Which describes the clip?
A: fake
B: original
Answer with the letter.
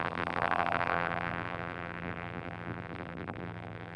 A